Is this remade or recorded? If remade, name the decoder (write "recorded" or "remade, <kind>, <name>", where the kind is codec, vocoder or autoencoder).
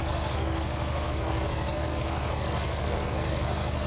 remade, codec, SNAC